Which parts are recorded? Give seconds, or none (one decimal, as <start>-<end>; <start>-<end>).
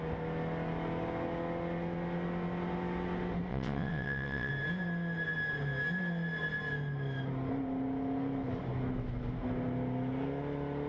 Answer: 0.0-3.5; 4.5-10.9